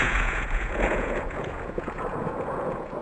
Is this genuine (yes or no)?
no